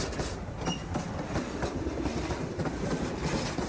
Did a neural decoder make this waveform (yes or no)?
no